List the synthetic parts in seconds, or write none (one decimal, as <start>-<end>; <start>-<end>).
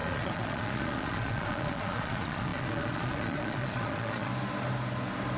0.0-4.3